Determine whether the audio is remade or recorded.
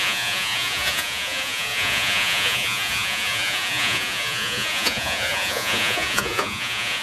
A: remade